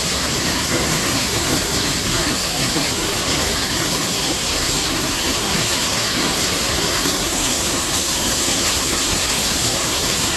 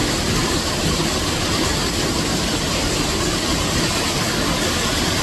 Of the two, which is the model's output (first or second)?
first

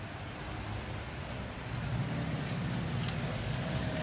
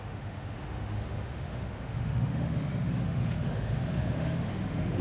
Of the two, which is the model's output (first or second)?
second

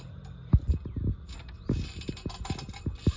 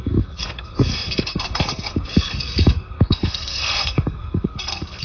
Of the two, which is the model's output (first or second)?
second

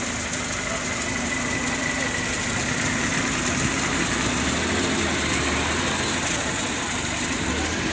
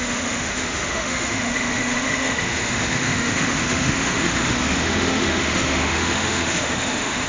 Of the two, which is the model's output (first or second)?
second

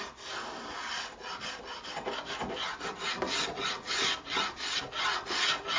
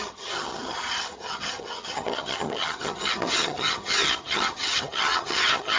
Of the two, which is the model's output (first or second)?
second